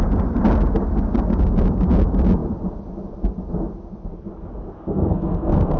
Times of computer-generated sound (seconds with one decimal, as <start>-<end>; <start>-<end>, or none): 4.5-5.8